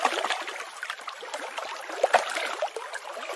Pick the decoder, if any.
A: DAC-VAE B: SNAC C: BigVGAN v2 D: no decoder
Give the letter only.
D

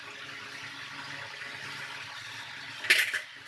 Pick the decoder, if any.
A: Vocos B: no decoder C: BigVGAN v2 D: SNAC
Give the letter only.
B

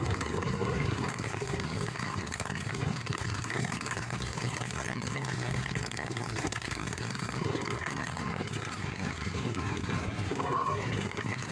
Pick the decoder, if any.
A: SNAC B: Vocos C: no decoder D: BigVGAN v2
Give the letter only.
A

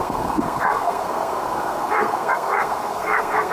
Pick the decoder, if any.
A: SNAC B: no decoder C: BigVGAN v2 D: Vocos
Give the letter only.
A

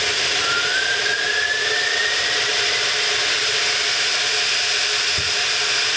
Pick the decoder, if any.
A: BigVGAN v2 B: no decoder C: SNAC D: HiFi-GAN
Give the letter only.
B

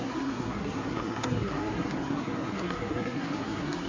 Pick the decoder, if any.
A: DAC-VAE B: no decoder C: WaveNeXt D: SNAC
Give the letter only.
D